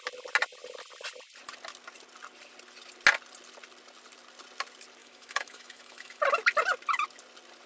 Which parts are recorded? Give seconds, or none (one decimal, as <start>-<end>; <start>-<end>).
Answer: 0.0-5.0; 6.2-7.7